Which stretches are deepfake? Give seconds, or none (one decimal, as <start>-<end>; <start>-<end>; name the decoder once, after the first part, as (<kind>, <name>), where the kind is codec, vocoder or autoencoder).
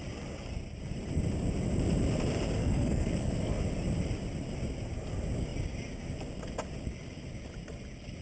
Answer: 2.6-3.6 (codec, SNAC)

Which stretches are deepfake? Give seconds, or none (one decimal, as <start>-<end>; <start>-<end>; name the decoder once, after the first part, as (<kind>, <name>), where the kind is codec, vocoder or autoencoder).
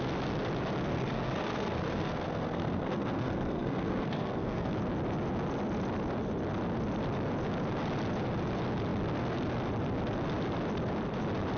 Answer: 0.9-4.7 (codec, SNAC)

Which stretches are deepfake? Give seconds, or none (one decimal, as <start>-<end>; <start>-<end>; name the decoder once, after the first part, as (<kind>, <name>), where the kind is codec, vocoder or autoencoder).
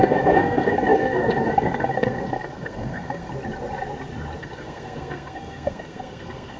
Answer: 0.0-3.3 (codec, SNAC); 4.4-6.6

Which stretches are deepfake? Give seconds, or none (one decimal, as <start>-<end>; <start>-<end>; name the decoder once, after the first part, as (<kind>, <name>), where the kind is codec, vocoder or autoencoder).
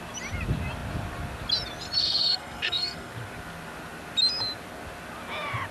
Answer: 2.0-3.1 (codec, SNAC)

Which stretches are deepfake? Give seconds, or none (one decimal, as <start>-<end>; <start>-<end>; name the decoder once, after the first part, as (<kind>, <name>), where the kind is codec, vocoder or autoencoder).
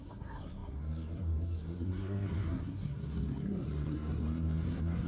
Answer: 0.0-5.1 (codec, SNAC)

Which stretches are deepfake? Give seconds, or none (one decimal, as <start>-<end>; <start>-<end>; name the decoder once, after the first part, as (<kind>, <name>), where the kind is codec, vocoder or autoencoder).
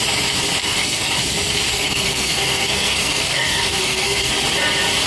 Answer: 0.6-1.1 (codec, SNAC); 1.7-4.3